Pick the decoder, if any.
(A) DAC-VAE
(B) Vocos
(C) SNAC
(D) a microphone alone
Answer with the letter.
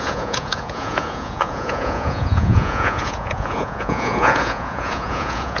B